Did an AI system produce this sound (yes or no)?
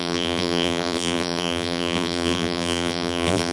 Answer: yes